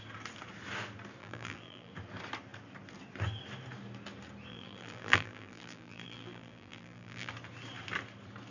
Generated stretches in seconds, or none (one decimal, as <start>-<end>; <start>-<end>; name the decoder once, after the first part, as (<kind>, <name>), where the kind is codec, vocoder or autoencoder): 1.2-1.9 (vocoder, BigVGAN v2); 4.5-7.3